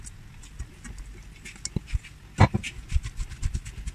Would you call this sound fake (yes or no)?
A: no